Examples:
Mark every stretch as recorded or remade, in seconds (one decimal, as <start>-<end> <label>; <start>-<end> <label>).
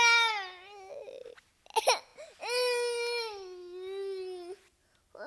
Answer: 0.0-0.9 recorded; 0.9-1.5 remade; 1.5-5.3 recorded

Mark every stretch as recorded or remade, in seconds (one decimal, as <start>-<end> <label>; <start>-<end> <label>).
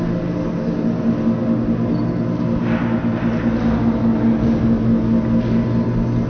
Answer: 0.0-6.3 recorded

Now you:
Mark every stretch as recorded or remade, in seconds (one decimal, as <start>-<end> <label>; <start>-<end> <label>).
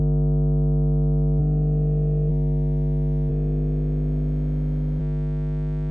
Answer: 0.0-1.4 recorded; 1.4-2.3 remade; 2.3-3.3 recorded; 3.3-5.0 remade; 5.0-5.9 recorded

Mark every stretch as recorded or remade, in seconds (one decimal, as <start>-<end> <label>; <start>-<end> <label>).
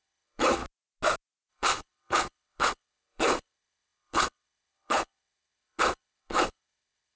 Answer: 0.0-0.6 remade; 0.6-1.5 recorded; 1.5-7.2 remade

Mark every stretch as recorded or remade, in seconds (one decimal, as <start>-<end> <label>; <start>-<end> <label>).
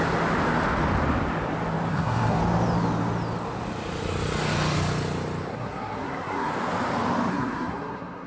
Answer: 0.0-1.9 recorded; 1.9-2.4 remade; 2.4-5.5 recorded; 5.5-6.5 remade; 6.5-7.3 recorded; 7.3-8.3 remade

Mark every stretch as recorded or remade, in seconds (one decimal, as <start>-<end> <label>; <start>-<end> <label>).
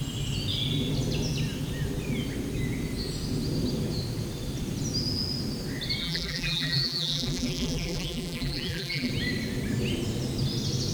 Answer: 0.0-6.0 recorded; 6.0-9.1 remade; 9.1-10.9 recorded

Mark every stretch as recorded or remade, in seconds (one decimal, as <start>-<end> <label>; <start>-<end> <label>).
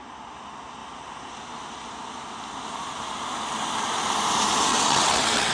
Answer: 0.0-4.7 recorded; 4.7-5.5 remade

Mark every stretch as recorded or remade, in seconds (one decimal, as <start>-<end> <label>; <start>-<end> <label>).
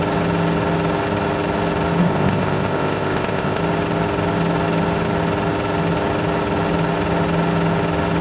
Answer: 0.0-2.0 recorded; 2.0-3.6 remade; 3.6-8.2 recorded